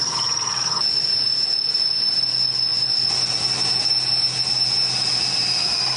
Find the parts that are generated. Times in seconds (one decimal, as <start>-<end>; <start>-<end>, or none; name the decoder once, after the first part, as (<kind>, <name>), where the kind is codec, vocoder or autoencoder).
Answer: none